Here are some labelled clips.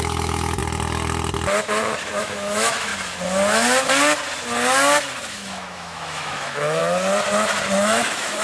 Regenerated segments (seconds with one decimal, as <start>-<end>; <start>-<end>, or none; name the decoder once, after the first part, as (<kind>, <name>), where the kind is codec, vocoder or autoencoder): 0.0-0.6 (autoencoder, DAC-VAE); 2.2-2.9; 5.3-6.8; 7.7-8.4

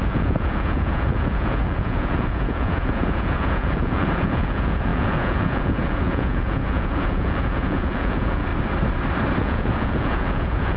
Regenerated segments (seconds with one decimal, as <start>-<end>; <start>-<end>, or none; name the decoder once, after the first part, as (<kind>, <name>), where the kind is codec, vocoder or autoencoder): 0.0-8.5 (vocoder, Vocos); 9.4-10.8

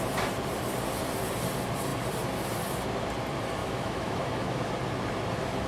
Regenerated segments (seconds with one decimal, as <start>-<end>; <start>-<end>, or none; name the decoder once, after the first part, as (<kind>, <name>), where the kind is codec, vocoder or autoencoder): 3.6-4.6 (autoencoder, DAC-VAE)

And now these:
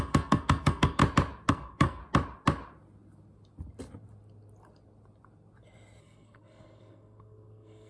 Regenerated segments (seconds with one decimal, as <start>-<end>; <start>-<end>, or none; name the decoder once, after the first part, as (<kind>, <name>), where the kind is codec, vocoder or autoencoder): 0.0-1.0 (codec, SNAC); 1.5-2.0; 6.0-7.9

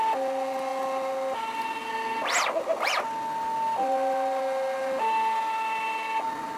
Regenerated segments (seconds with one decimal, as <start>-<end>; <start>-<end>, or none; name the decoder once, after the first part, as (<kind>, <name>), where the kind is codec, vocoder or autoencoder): none